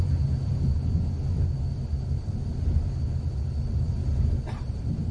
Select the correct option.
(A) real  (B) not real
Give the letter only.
A